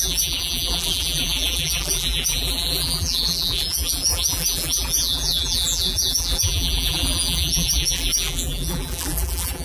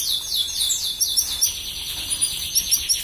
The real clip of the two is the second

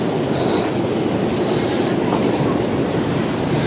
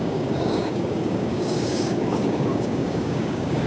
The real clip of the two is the first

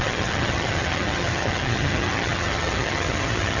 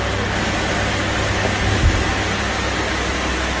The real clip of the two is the second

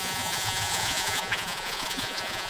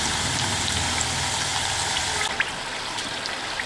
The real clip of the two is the second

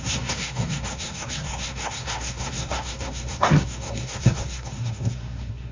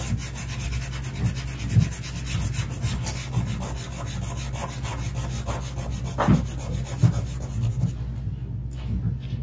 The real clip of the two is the second